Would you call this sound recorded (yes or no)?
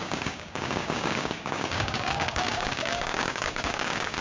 no